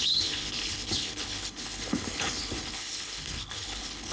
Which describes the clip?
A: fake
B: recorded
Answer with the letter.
A